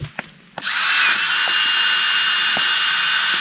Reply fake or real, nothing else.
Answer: real